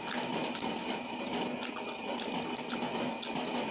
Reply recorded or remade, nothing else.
recorded